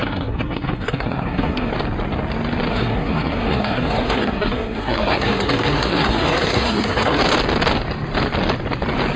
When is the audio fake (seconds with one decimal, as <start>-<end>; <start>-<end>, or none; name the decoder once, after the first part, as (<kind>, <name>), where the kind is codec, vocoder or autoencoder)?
0.0-1.7 (codec, SNAC); 2.7-7.2